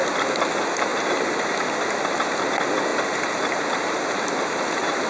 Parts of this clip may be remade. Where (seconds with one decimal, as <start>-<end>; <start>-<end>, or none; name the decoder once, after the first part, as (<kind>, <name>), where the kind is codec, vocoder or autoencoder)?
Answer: 0.9-1.5 (vocoder, BigVGAN v2); 2.9-5.1